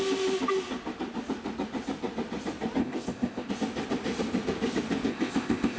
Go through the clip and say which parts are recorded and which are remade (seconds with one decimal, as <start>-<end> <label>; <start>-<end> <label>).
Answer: 0.0-2.8 recorded; 2.8-3.5 remade; 3.5-5.1 recorded; 5.1-5.8 remade